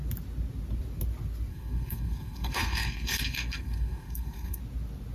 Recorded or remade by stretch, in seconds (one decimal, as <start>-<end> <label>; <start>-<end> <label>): 0.0-1.5 recorded; 1.5-4.6 remade; 4.6-5.1 recorded